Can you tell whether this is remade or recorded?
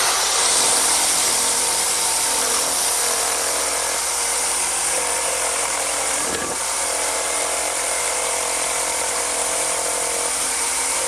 remade